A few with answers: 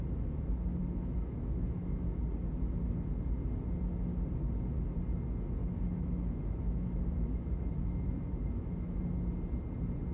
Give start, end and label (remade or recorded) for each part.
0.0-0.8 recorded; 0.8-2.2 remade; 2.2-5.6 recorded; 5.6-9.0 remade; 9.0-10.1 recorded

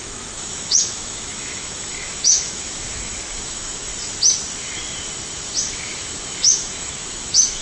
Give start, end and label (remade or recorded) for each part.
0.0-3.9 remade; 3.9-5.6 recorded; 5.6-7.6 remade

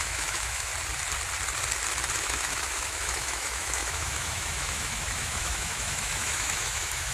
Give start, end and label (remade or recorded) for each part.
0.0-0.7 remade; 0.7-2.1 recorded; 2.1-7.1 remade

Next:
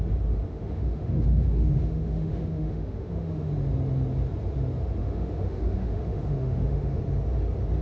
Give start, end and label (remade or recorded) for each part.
0.0-0.5 recorded; 0.5-3.5 remade; 3.5-5.0 recorded; 5.0-7.0 remade; 7.0-7.8 recorded

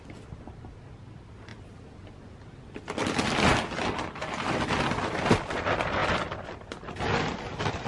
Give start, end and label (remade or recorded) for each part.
0.0-7.9 recorded

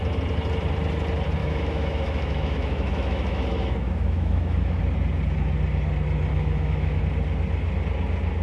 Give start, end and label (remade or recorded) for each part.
0.0-1.4 recorded; 1.4-4.8 remade; 4.8-6.3 recorded; 6.3-7.0 remade; 7.0-8.4 recorded

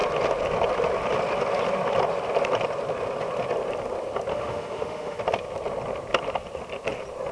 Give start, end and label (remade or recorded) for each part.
0.0-4.3 recorded; 4.3-5.2 remade; 5.2-7.3 recorded